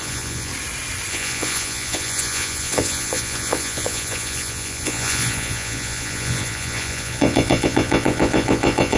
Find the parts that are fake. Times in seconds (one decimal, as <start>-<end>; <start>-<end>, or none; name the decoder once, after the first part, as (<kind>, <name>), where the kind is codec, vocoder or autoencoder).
0.0-0.5 (vocoder, Vocos); 1.1-9.0